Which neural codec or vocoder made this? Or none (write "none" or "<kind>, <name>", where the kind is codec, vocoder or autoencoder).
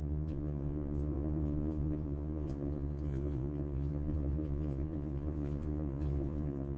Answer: vocoder, Vocos